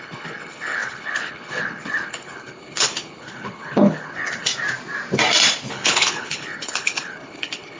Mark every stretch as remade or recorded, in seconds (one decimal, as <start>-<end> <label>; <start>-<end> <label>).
0.0-4.5 remade; 4.5-5.7 recorded; 5.7-7.8 remade